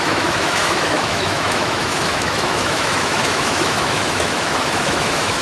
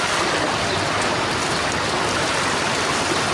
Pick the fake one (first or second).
first